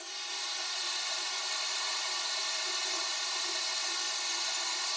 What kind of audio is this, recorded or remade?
recorded